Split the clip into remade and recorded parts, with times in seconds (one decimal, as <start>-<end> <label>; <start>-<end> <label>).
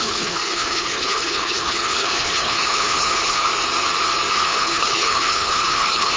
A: 0.0-3.5 remade; 3.5-4.3 recorded; 4.3-6.2 remade